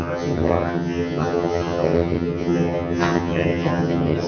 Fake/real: fake